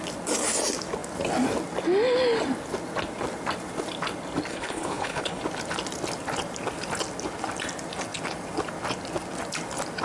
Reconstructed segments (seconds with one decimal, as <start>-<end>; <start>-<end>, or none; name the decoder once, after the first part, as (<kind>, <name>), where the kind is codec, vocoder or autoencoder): 4.5-5.4 (codec, HILCodec)